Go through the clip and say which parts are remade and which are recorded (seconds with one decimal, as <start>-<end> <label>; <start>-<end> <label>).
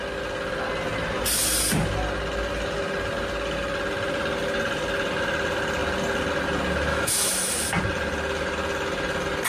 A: 0.0-6.9 recorded; 6.9-7.7 remade; 7.7-9.5 recorded